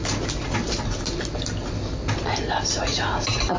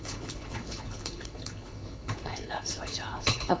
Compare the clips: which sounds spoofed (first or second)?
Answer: second